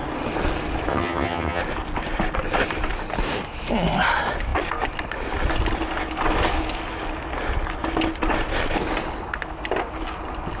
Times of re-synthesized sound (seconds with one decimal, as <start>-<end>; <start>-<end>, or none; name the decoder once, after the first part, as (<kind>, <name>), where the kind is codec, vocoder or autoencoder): 0.9-1.6 (vocoder, HiFi-GAN)